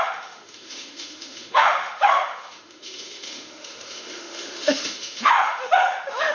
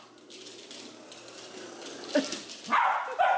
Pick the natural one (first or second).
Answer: second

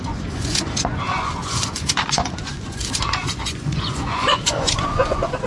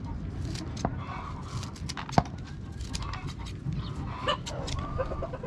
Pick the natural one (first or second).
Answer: second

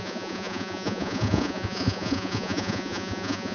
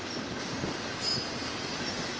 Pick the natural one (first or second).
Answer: second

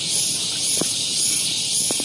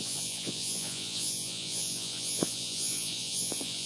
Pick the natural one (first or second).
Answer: first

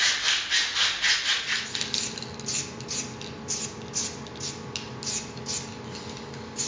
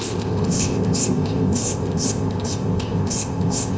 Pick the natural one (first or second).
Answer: first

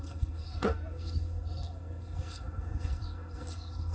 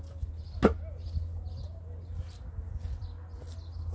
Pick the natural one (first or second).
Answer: second